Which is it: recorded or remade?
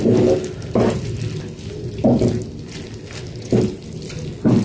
recorded